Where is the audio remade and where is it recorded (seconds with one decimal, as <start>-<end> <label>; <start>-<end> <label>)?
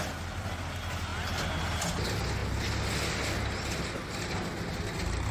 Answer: 0.0-5.3 recorded